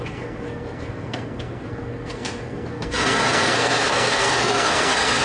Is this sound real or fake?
fake